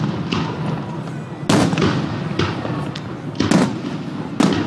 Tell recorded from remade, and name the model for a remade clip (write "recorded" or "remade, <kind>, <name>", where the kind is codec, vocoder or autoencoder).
recorded